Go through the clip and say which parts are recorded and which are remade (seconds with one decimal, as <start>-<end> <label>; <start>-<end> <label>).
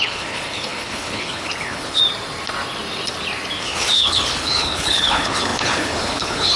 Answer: 0.0-2.0 remade; 2.0-3.6 recorded; 3.6-6.6 remade